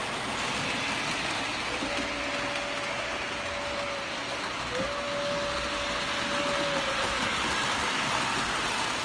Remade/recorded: recorded